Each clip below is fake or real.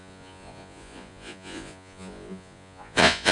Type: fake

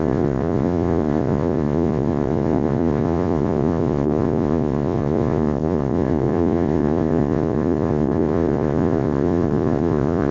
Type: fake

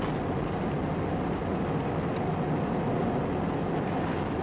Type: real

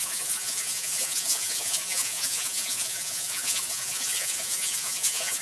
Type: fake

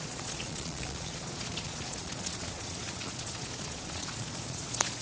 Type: fake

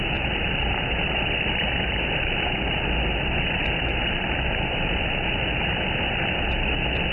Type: real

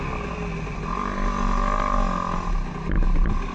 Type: real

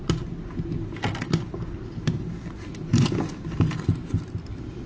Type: real